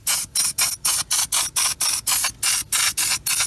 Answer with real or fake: real